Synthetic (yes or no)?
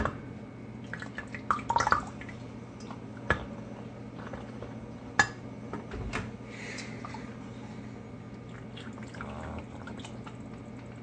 no